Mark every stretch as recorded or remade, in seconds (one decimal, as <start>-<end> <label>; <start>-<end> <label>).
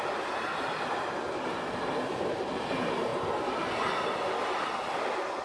0.0-0.9 recorded; 0.9-3.1 remade; 3.1-4.9 recorded; 4.9-5.4 remade